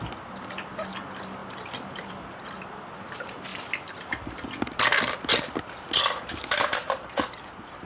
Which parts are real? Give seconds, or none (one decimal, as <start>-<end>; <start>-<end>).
0.0-7.9